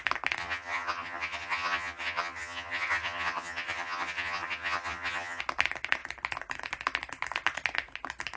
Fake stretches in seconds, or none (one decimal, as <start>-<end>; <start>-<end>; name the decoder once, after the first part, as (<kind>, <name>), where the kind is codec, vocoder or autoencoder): 0.4-5.4 (vocoder, HiFi-GAN)